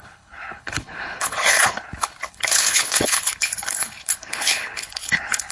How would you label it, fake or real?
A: fake